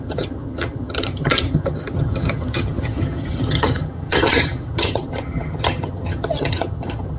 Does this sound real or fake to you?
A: fake